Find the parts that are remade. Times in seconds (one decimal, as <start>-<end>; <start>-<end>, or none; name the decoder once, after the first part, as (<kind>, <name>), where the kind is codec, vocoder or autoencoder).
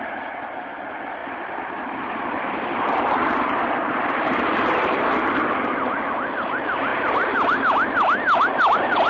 1.2-6.1 (vocoder, BigVGAN v2); 6.9-7.6